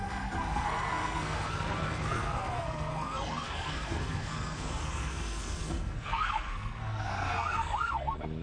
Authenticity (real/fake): fake